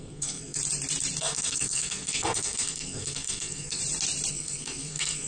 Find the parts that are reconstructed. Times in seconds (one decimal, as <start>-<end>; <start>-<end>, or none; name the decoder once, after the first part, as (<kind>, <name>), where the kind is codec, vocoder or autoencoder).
0.0-0.6 (codec, SNAC); 1.2-3.8; 4.3-5.3